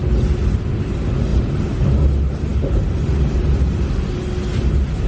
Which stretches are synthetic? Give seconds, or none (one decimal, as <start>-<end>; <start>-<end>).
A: 1.3-1.9